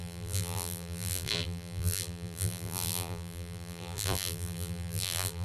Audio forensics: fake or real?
fake